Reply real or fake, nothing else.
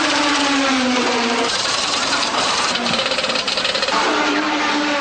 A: fake